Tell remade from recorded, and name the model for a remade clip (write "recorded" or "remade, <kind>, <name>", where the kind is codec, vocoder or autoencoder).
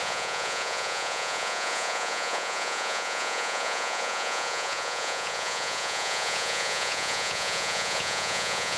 remade, vocoder, Vocos